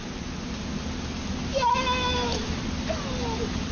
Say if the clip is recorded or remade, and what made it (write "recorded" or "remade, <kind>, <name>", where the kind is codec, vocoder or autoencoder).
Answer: recorded